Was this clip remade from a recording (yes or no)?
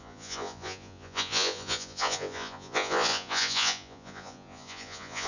yes